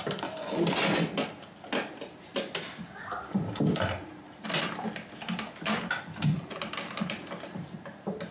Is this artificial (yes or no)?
no